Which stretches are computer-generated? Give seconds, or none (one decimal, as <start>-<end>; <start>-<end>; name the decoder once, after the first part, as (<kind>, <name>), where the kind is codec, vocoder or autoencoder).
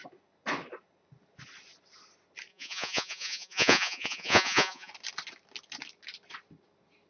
2.5-4.9 (vocoder, Vocos)